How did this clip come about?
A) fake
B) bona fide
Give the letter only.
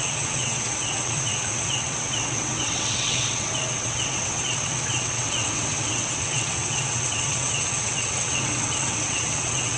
A